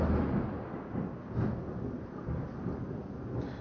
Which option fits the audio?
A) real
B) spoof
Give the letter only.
A